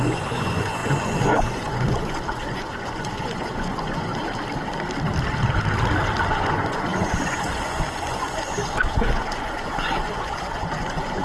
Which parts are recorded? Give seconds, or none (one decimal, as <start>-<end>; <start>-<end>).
4.1-6.3